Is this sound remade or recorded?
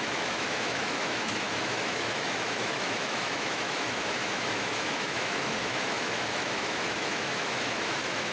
remade